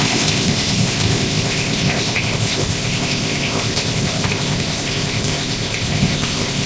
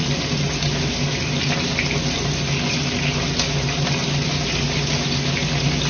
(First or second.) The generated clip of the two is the first